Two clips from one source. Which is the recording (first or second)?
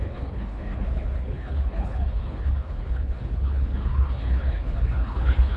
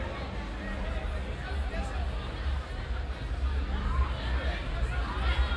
second